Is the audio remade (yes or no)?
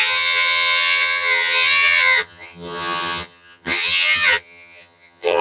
yes